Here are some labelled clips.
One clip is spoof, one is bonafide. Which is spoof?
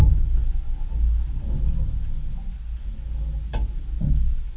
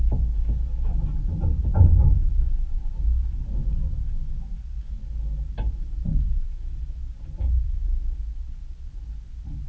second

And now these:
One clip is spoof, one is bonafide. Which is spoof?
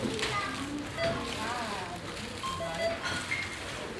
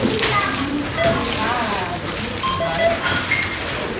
second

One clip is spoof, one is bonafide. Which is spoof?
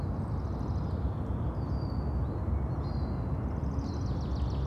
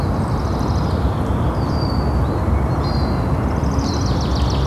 second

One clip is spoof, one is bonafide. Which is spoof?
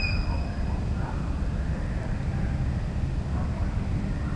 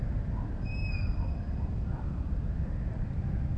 second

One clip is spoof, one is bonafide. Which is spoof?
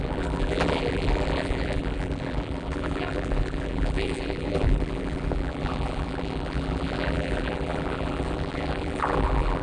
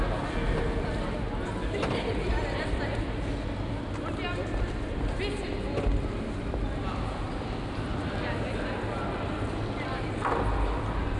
first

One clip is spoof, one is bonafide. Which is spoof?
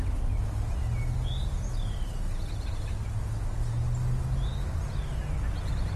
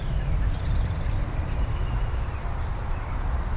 second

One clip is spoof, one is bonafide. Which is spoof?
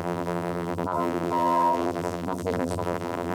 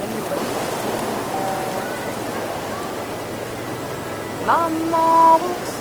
first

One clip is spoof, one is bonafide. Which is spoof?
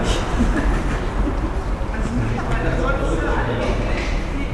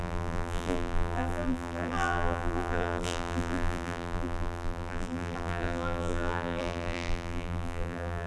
second